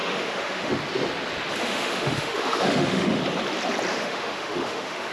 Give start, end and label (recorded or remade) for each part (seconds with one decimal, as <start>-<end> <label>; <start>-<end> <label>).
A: 0.0-0.7 remade; 0.7-1.6 recorded; 1.6-3.2 remade; 3.2-3.9 recorded; 3.9-5.1 remade